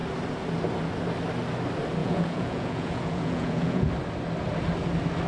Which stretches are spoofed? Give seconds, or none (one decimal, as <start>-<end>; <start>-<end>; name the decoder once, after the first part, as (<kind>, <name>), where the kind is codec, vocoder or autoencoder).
2.0-3.9 (vocoder, Vocos)